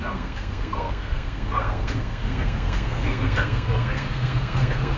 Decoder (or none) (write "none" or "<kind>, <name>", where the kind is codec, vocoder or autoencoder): codec, SNAC